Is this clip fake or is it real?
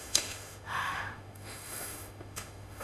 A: fake